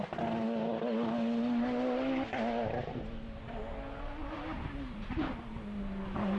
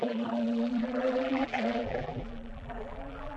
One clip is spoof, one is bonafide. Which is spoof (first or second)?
second